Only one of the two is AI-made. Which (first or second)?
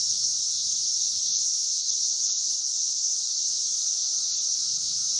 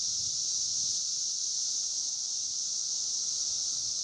first